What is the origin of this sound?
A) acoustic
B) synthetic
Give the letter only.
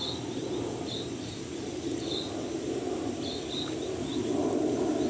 A